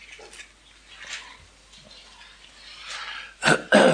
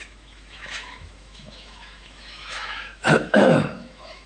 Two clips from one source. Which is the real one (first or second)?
first